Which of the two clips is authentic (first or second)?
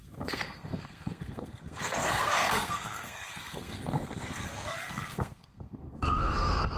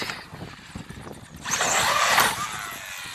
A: second